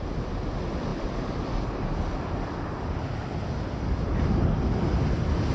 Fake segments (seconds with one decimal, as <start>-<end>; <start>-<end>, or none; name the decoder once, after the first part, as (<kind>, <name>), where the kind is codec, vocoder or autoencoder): none